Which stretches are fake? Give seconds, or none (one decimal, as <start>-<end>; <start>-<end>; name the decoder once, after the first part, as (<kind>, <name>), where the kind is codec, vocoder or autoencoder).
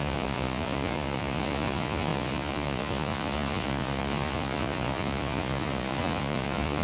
0.0-6.8 (vocoder, Vocos)